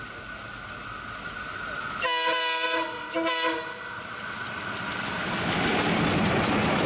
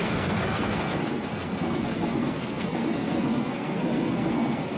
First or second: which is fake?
second